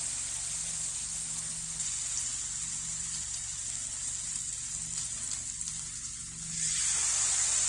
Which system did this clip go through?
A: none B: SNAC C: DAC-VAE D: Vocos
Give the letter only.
A